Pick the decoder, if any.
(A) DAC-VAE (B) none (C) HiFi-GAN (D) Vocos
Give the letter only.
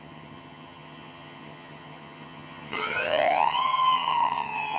C